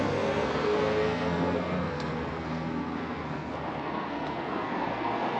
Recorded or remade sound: remade